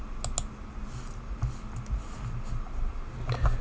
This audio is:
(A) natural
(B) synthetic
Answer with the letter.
A